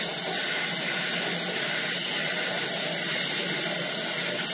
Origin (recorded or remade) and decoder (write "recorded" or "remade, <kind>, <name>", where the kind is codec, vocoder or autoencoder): recorded